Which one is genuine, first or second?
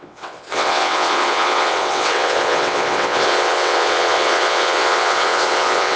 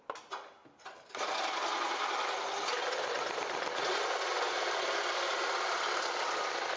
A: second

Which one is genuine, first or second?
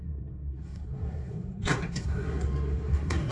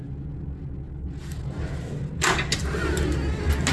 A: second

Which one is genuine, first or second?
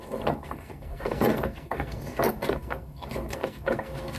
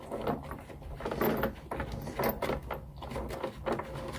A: second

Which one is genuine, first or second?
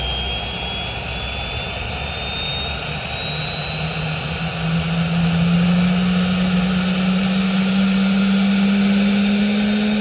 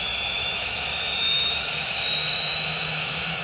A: first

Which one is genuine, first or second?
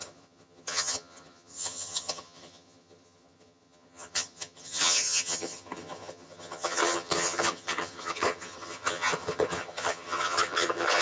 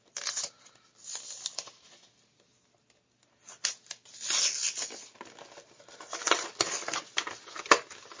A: second